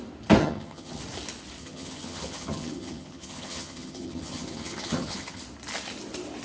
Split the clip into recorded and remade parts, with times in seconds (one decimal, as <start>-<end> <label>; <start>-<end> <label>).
0.0-0.4 recorded; 0.4-1.0 remade; 1.0-1.6 recorded; 1.6-5.4 remade; 5.4-6.4 recorded